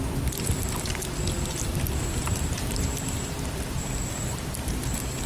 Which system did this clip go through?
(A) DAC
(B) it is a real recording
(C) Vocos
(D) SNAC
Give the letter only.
B